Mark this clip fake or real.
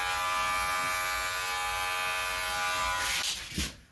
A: real